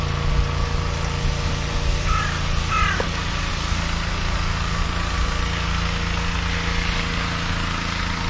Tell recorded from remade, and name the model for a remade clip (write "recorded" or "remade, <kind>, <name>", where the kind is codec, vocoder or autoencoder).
recorded